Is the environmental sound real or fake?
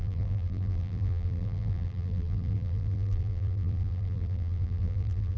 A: fake